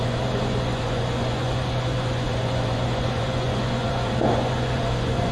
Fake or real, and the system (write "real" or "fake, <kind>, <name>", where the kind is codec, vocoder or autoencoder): fake, vocoder, Vocos